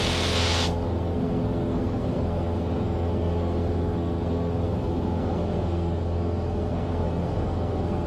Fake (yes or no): yes